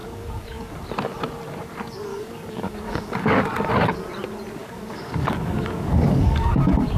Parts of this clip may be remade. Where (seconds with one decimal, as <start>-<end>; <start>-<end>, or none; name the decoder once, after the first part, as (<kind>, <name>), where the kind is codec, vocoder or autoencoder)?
0.0-0.7 (codec, DAC); 2.1-3.4; 4.6-7.0